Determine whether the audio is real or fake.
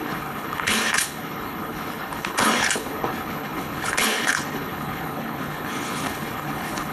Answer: fake